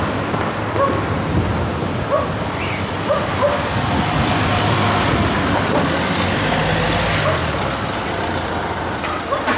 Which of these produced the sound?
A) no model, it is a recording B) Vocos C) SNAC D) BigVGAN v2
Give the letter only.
A